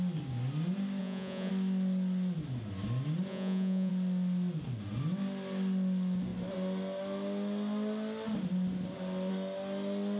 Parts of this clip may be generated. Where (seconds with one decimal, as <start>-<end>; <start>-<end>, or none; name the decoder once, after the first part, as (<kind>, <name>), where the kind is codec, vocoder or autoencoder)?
1.0-1.5 (vocoder, Vocos); 3.3-3.9

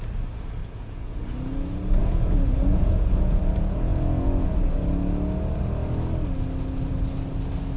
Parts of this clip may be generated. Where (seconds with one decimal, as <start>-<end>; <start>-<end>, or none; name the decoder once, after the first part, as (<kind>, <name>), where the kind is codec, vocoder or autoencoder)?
0.6-1.2 (vocoder, Vocos); 2.0-3.4